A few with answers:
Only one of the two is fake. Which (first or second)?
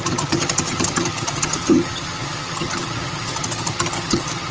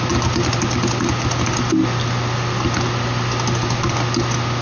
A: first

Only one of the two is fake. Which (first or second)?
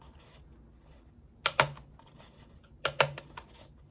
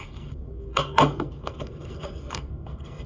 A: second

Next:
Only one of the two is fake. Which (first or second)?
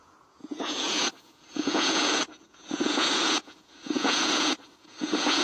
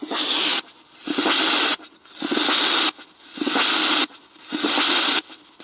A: first